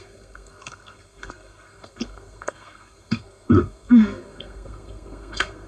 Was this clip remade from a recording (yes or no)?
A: yes